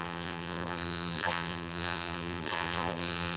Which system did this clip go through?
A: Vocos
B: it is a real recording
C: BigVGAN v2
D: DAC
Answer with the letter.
C